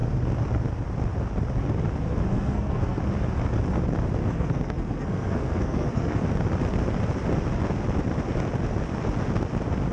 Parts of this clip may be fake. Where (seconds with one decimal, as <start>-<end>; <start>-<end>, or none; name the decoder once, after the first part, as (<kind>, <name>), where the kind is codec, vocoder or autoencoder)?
2.3-3.0 (codec, SNAC); 4.2-6.2